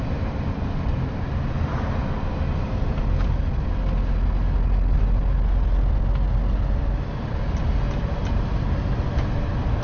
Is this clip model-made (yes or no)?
no